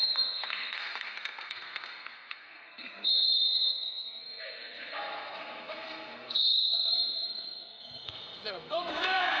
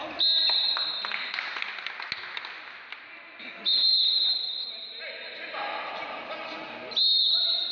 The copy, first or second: first